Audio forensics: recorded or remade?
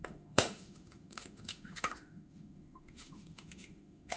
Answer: remade